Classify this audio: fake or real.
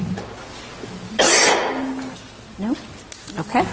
real